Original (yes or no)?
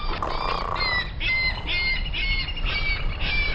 yes